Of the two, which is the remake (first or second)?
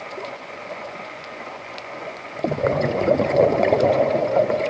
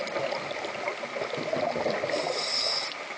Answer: first